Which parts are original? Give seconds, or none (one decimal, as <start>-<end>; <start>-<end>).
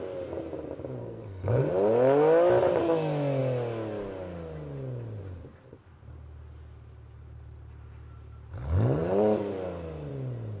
0.0-1.0; 1.7-10.6